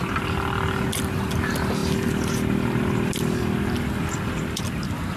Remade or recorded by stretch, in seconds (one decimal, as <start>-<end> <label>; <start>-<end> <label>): 0.0-5.2 recorded